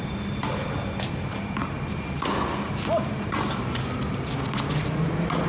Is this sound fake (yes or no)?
no